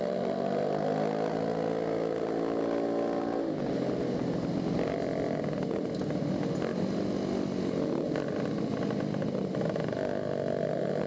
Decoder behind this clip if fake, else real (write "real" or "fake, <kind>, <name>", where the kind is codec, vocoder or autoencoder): real